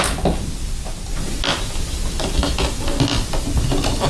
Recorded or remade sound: recorded